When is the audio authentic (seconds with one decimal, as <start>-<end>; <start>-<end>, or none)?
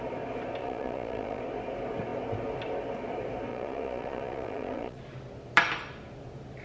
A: 0.0-0.6; 1.4-3.5; 5.0-6.6